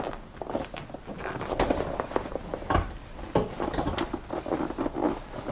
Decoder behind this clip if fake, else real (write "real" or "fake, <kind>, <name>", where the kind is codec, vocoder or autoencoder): real